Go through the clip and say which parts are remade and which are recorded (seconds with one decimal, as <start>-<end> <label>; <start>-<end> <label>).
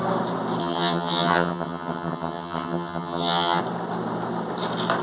0.0-0.6 recorded; 0.6-3.6 remade; 3.6-5.0 recorded